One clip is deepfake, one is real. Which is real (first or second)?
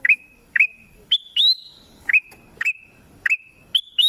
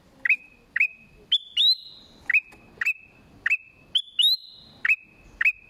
second